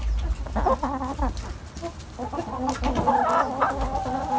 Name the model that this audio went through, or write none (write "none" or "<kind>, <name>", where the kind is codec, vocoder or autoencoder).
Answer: none